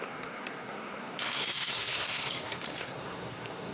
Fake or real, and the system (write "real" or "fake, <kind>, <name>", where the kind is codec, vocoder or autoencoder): fake, codec, SNAC